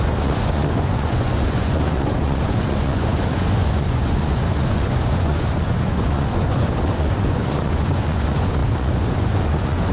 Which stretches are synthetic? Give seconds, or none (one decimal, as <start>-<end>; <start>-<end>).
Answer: 0.0-9.9